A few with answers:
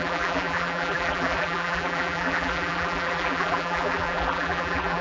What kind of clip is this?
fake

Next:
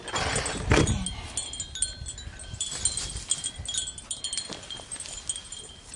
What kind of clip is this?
real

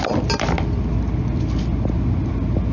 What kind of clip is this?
real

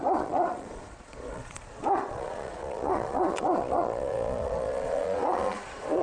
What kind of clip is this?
fake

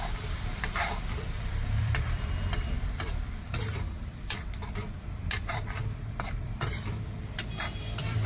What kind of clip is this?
fake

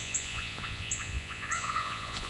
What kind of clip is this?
fake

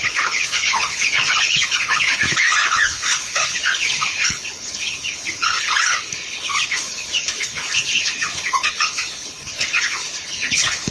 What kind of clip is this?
fake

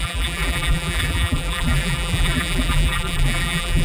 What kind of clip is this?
fake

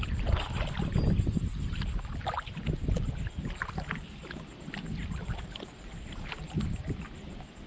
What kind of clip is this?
real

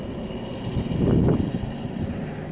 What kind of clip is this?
real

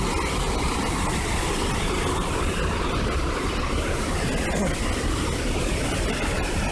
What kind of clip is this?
real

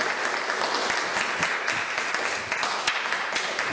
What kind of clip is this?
real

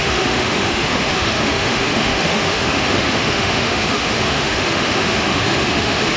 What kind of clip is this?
fake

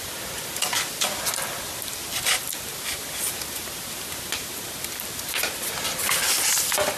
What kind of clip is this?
real